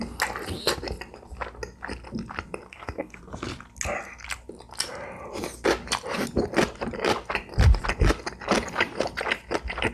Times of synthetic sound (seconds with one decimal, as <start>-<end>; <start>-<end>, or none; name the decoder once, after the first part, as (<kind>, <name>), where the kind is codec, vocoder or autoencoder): 2.7-3.2 (codec, SNAC)